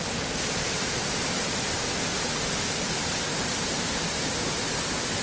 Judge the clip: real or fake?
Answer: fake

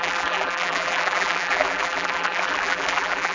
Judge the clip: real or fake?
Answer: fake